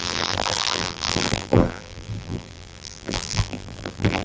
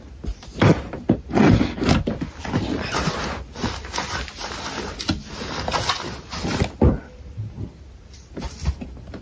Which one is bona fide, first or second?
second